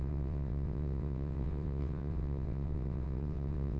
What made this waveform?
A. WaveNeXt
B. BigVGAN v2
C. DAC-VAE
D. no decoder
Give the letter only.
A